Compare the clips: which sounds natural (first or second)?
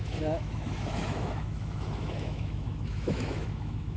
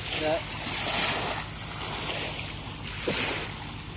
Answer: second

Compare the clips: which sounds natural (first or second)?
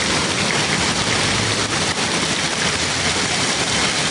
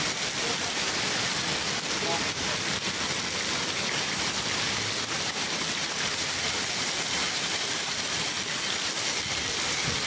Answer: second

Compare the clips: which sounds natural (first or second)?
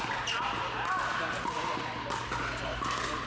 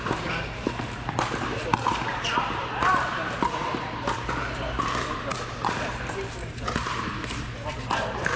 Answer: first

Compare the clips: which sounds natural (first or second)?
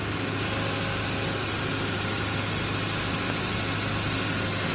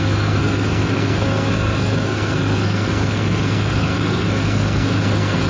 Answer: first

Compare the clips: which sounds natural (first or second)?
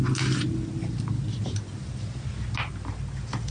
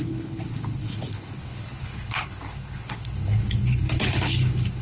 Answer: first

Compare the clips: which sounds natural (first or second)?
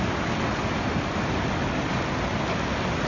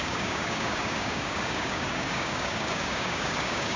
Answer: first